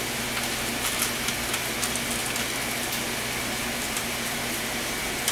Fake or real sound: real